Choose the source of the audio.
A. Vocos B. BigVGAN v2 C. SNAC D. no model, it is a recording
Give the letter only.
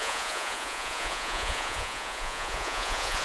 A